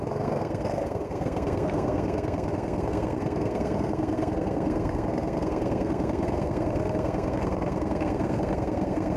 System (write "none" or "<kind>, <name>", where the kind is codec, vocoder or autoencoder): codec, SNAC